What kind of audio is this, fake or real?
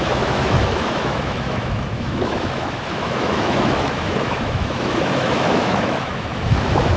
fake